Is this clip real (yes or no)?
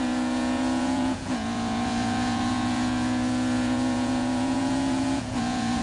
no